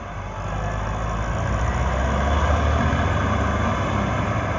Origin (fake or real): real